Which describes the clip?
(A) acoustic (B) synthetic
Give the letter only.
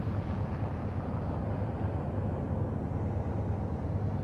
A